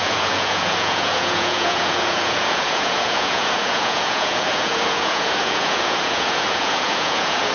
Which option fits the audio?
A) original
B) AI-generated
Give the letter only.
B